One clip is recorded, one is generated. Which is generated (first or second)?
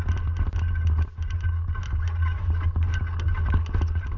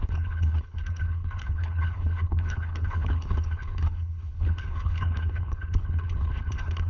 second